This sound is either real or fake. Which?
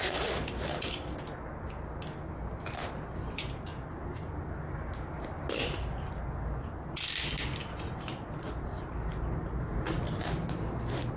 real